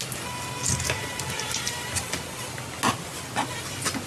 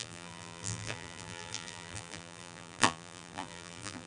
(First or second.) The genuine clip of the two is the first